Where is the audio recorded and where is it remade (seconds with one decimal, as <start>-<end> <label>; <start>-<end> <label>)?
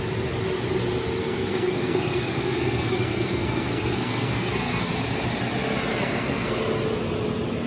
0.0-1.2 recorded; 1.2-4.9 remade; 4.9-5.9 recorded; 5.9-6.6 remade; 6.6-7.7 recorded